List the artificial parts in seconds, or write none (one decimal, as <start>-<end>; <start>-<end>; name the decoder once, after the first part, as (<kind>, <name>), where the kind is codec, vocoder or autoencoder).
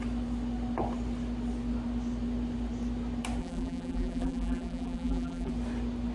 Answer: 3.4-5.5 (vocoder, BigVGAN v2)